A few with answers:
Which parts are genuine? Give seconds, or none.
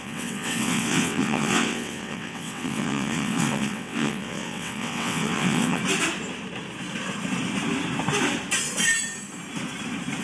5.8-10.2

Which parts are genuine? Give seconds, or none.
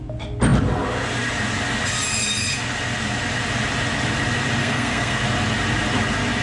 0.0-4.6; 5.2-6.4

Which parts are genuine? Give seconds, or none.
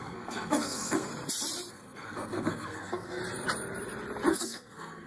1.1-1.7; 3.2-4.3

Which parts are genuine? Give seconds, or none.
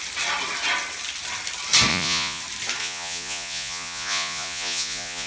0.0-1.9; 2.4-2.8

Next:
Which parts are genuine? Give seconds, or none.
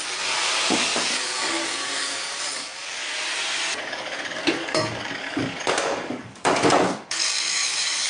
3.0-3.8